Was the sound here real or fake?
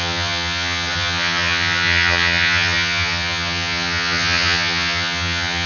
fake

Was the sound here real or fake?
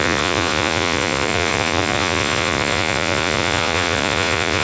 fake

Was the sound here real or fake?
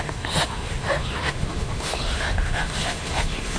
fake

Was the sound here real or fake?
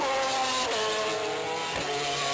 real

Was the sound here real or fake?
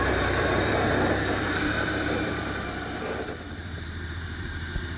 fake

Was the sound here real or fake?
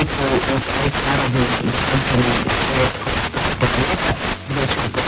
real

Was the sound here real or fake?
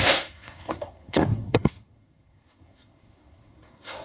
fake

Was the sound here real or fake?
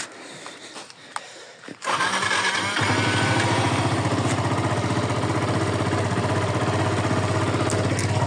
real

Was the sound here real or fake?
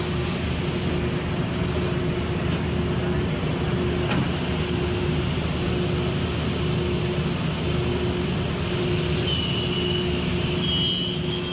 real